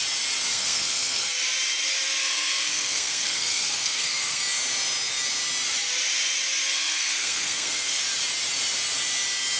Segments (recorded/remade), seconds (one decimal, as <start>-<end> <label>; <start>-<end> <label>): 0.0-0.5 recorded; 0.5-1.3 remade; 1.3-2.2 recorded; 2.2-4.4 remade; 4.4-6.7 recorded; 6.7-8.0 remade; 8.0-9.6 recorded